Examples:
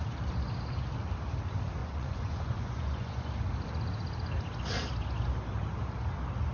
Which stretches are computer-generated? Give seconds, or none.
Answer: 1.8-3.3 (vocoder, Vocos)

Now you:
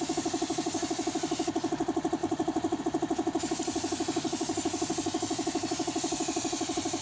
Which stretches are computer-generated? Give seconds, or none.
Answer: 2.2-2.8 (vocoder, BigVGAN v2)

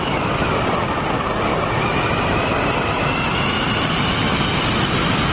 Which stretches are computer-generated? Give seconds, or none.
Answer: none

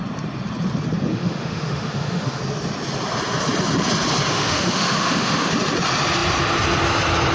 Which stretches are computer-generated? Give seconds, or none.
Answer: 1.1-2.4 (autoencoder, DAC-VAE); 4.3-5.5

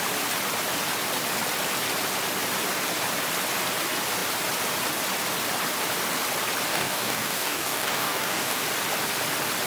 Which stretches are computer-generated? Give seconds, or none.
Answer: 6.7-8.6 (codec, DAC)

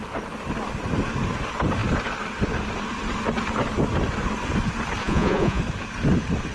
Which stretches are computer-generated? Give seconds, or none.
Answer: 5.0-5.6 (vocoder, Vocos)

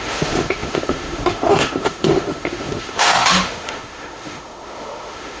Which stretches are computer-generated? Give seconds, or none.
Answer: 0.0-5.4 (autoencoder, DAC-VAE)